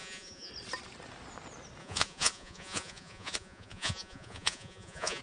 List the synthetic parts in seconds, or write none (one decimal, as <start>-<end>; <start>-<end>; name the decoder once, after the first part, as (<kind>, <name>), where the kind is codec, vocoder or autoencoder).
0.0-0.5 (vocoder, Vocos); 1.8-5.2